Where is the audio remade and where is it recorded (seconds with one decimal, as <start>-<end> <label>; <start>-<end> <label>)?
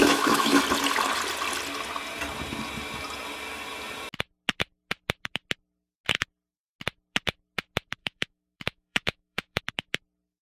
0.0-0.6 remade; 0.6-8.0 recorded; 8.0-9.6 remade; 9.6-10.4 recorded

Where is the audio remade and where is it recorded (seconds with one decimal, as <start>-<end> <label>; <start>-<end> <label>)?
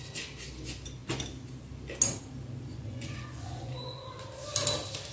0.0-2.7 recorded; 2.7-3.7 remade; 3.7-5.1 recorded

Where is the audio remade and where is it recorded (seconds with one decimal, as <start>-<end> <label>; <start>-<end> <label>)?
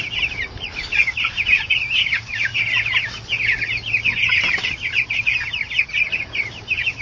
0.0-2.5 remade; 2.5-6.1 recorded; 6.1-7.0 remade